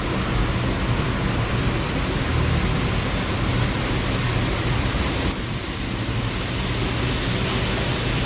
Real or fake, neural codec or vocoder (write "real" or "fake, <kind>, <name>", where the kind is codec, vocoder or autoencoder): real